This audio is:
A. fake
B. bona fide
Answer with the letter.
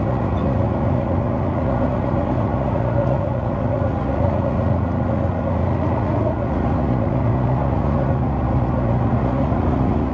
A